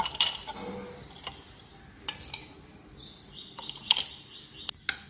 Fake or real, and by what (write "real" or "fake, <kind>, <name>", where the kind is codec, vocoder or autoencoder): real